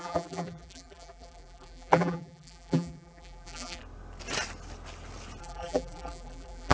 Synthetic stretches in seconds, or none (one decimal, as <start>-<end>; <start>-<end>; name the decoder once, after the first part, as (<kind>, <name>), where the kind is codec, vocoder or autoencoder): 0.0-3.8 (vocoder, BigVGAN v2); 5.4-6.7